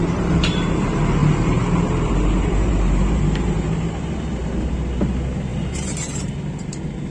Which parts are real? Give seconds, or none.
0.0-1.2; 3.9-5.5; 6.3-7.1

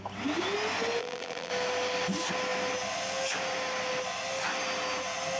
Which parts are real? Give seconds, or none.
0.0-1.0; 1.5-5.4

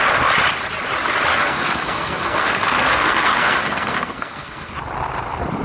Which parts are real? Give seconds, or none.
0.0-1.3; 4.7-5.6

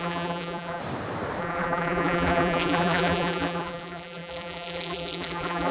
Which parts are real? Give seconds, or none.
0.8-1.4

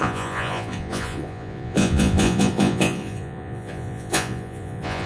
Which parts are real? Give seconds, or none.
none

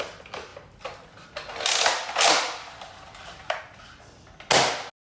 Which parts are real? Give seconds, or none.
0.0-5.1

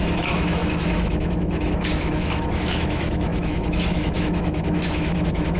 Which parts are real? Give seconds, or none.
none

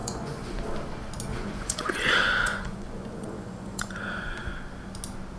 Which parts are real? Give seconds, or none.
0.6-1.3; 4.5-5.4